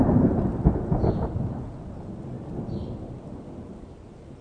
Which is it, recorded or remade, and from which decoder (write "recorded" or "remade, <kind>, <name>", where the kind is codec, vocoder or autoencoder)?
recorded